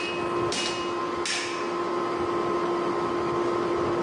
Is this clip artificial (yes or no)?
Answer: no